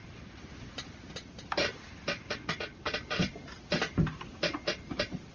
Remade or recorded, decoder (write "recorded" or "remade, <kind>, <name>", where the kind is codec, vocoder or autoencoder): remade, vocoder, BigVGAN v2